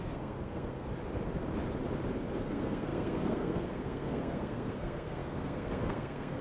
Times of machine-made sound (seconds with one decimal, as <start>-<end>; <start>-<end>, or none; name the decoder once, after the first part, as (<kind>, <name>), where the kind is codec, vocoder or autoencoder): 0.0-0.9 (codec, SNAC); 2.4-6.4